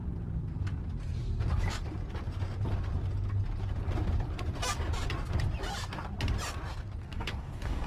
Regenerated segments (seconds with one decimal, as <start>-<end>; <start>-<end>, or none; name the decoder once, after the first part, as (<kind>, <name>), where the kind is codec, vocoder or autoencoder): 7.0-7.9 (codec, DAC)